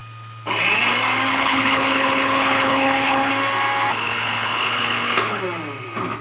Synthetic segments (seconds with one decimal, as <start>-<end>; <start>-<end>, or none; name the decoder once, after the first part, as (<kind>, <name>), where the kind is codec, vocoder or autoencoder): 1.3-3.3 (codec, HILCodec); 3.9-5.4